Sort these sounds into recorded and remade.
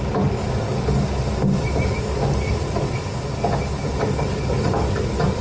recorded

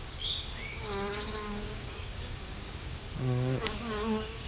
remade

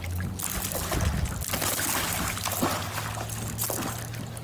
recorded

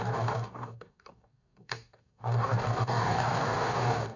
remade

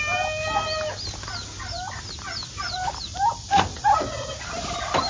recorded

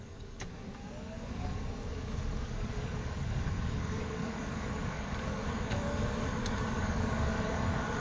remade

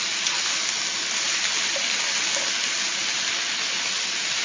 recorded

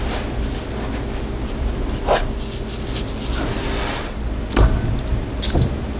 recorded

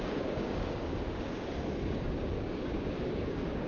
remade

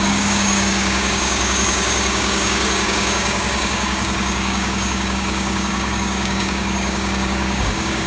remade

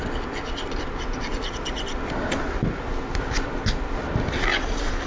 recorded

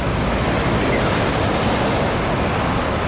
recorded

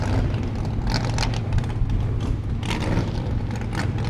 recorded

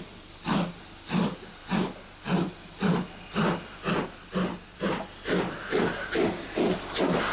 recorded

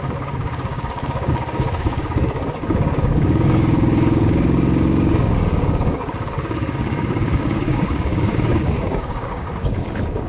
remade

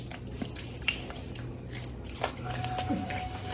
recorded